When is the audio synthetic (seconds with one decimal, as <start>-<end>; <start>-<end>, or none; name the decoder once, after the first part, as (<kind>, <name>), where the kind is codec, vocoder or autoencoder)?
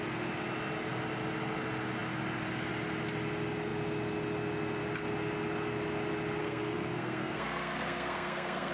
6.4-8.7 (codec, SNAC)